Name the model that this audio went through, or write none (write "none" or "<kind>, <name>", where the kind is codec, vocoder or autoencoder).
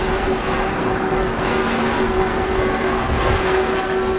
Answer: codec, SNAC